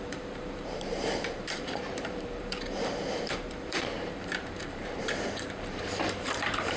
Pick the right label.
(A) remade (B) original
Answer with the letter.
A